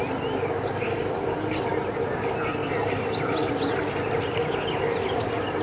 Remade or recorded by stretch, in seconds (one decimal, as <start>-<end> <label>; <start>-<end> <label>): 0.0-5.6 recorded